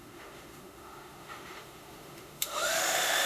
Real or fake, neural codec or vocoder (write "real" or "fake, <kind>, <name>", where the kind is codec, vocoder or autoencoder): fake, autoencoder, DAC-VAE